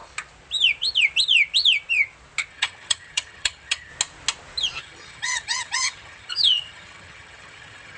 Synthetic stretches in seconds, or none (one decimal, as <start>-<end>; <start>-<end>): 2.5-3.9; 4.8-8.0